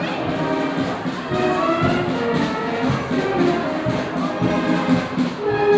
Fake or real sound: real